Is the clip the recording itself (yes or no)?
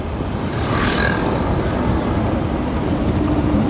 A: yes